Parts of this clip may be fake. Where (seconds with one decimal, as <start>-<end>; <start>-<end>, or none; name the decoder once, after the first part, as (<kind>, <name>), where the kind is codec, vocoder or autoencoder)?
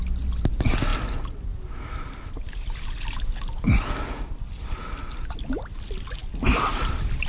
none